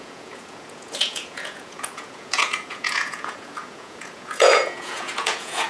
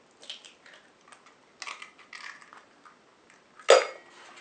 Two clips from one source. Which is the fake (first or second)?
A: first